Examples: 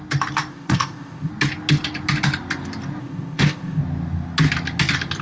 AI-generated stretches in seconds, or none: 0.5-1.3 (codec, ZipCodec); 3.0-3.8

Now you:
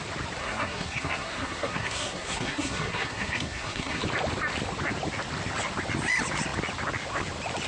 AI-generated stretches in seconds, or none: 0.4-4.0 (codec, SNAC)

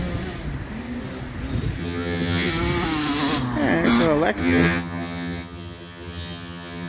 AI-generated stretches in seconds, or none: 1.8-2.5 (vocoder, HiFi-GAN); 4.4-6.9

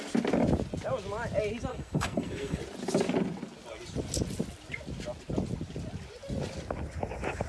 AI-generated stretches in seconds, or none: 1.7-2.6 (codec, SNAC)

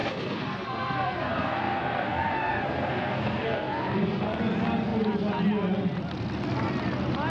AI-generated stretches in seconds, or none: 0.0-4.4 (codec, SNAC)